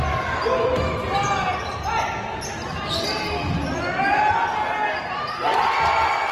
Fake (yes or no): no